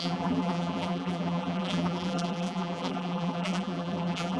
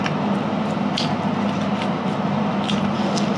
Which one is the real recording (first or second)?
second